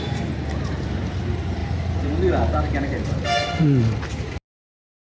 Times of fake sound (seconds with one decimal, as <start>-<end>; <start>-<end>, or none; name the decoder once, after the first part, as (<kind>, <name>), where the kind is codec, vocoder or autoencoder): none